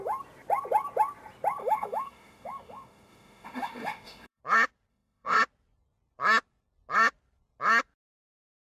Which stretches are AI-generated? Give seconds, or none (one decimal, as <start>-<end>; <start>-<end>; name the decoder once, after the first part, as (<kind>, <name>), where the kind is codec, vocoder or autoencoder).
1.6-4.4 (autoencoder, DAC-VAE); 4.9-5.4